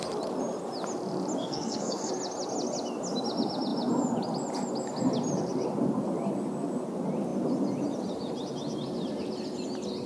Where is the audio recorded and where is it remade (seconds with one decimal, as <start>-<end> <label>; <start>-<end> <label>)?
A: 0.0-1.4 recorded; 1.4-2.1 remade; 2.1-10.1 recorded